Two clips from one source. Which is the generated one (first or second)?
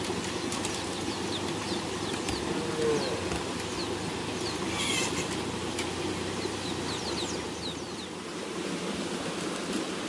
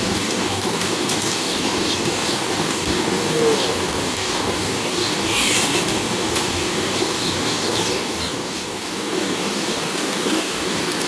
second